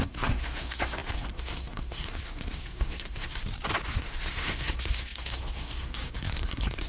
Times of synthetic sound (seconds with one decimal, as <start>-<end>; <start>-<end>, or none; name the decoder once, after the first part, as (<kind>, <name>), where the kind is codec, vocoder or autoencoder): 0.0-3.4 (codec, SNAC); 4.0-6.9